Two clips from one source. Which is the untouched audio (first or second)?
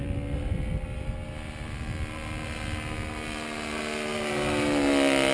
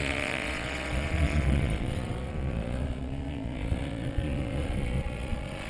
first